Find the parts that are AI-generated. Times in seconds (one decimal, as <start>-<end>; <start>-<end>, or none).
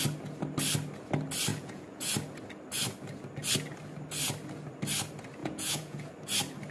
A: 1.5-2.1; 5.4-6.1